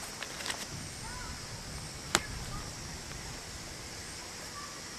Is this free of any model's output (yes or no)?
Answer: yes